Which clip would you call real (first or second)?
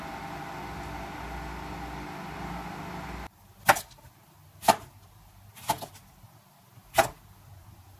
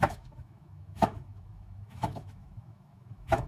first